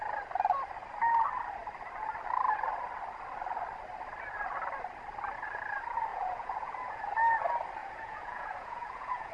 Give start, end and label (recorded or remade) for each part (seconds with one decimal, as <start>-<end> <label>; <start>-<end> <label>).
0.0-6.1 recorded; 6.1-7.1 remade; 7.1-7.8 recorded; 7.8-9.3 remade